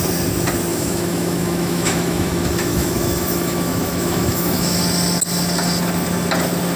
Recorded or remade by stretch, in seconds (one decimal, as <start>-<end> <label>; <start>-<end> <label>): 0.0-0.7 recorded; 0.7-4.8 remade; 4.8-6.8 recorded